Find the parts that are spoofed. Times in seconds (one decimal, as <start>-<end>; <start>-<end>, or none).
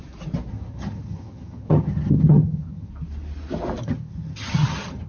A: 0.5-2.9; 3.8-5.1